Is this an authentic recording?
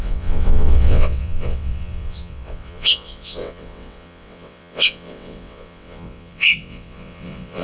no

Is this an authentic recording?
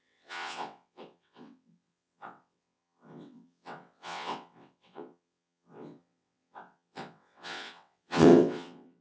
no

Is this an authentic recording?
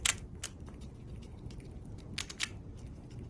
yes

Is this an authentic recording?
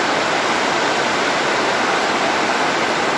yes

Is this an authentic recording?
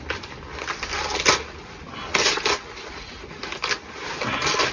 yes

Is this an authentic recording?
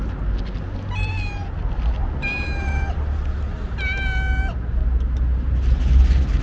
yes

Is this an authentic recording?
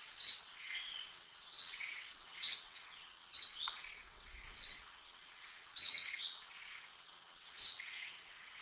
no